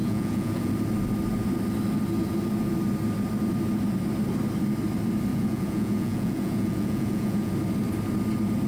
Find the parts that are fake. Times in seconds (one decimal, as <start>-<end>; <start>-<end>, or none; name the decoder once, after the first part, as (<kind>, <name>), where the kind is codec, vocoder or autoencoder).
0.0-0.7 (vocoder, Vocos); 5.3-7.5